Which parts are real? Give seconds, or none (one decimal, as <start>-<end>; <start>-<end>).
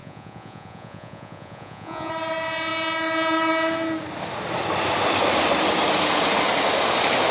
2.1-7.3